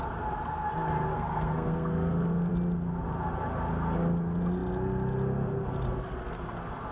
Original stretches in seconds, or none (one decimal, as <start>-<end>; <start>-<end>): 0.0-1.1; 2.5-6.9